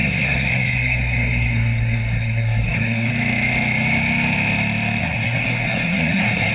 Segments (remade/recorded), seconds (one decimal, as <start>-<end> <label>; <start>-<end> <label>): 0.0-3.1 remade; 3.1-5.0 recorded; 5.0-6.5 remade